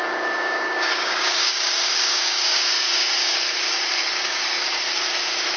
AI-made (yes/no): yes